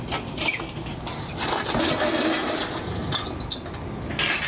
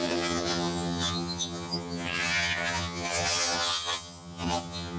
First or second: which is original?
first